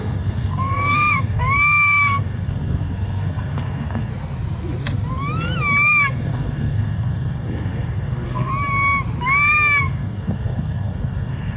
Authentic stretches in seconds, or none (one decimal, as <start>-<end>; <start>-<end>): 4.1-6.1; 8.5-9.8